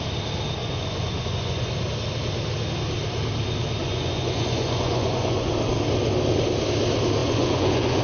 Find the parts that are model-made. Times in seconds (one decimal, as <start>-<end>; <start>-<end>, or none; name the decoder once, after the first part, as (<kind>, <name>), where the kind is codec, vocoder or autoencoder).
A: 0.6-1.7 (vocoder, Vocos); 3.8-5.5; 7.2-8.0